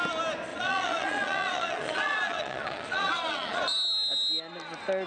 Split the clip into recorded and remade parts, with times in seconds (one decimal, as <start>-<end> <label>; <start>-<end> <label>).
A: 0.0-0.5 recorded; 0.5-3.6 remade; 3.6-5.1 recorded